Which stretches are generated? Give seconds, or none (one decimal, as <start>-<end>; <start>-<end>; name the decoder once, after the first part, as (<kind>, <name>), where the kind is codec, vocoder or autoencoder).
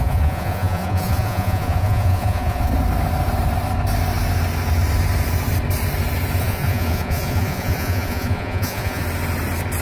0.0-2.7 (vocoder, Vocos); 6.4-9.0